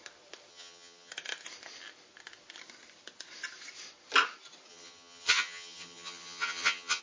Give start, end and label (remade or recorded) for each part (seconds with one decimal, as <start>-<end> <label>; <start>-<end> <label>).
0.0-0.5 recorded; 0.5-1.1 remade; 1.1-4.7 recorded; 4.7-7.0 remade